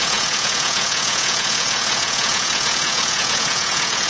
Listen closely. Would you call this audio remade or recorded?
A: remade